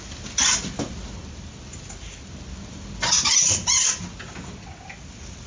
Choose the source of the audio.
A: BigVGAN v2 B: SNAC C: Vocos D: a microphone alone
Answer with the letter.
D